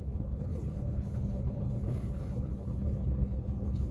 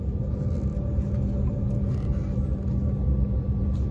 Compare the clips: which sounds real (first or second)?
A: second